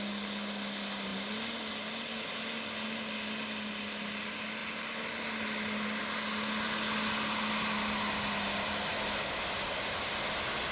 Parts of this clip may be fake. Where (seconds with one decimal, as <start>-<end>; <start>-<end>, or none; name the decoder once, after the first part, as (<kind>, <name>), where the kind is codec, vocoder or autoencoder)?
none